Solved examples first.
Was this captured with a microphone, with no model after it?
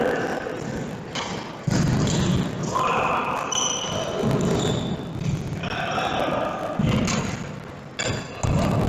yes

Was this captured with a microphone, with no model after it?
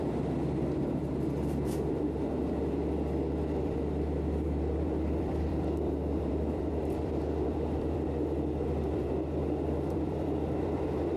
no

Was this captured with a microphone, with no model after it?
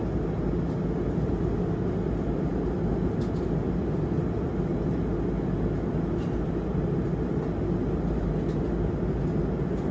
yes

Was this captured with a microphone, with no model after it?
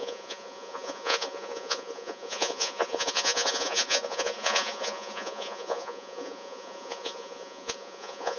no